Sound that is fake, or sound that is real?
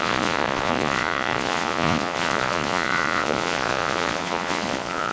fake